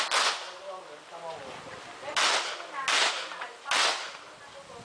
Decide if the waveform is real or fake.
real